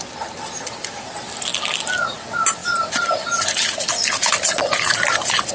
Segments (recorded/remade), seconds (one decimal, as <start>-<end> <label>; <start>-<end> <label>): 0.0-5.5 recorded